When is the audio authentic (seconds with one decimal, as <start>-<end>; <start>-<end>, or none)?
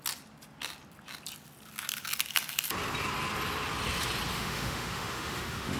0.0-4.3